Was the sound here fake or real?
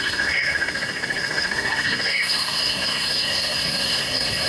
fake